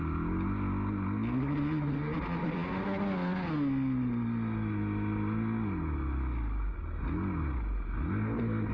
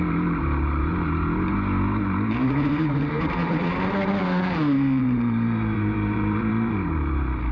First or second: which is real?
first